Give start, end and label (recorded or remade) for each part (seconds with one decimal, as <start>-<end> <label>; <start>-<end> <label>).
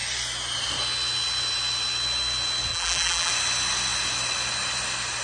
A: 0.0-2.7 recorded; 2.7-3.3 remade; 3.3-5.2 recorded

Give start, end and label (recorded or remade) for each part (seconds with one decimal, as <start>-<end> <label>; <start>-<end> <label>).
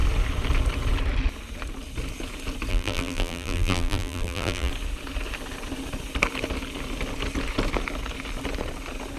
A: 0.0-2.7 recorded; 2.7-4.7 remade; 4.7-9.2 recorded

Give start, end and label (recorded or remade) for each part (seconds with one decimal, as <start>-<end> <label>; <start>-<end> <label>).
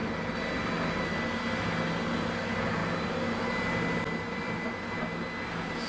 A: 0.0-5.9 recorded